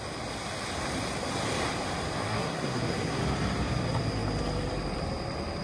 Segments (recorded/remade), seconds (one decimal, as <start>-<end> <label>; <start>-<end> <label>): 0.0-2.3 recorded; 2.3-3.2 remade; 3.2-5.6 recorded